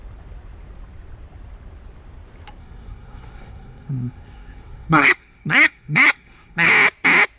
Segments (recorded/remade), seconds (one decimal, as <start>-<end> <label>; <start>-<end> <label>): 0.0-2.6 recorded; 2.6-6.7 remade; 6.7-7.4 recorded